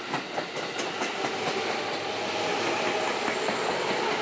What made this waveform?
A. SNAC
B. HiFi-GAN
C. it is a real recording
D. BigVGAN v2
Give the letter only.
C